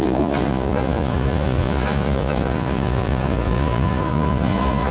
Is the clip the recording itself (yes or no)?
no